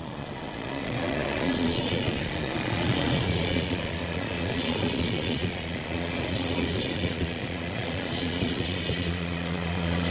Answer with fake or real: fake